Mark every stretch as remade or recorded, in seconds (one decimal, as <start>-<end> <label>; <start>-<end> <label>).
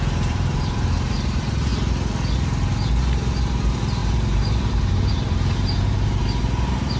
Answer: 0.0-1.7 remade; 1.7-3.0 recorded; 3.0-7.0 remade